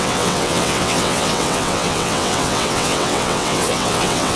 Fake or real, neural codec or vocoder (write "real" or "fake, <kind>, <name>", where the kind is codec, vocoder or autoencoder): fake, vocoder, WaveNeXt